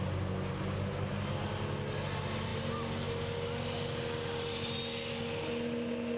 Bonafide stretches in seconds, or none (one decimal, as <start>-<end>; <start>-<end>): 0.0-6.2